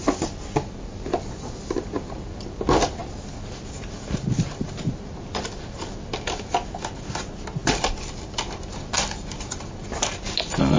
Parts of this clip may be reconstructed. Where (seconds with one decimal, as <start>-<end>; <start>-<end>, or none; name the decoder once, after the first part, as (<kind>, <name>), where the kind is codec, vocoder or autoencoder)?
none